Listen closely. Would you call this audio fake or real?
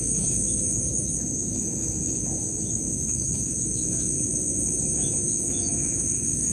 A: fake